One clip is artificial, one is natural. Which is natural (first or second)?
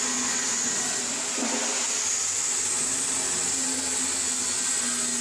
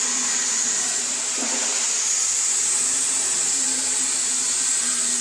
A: first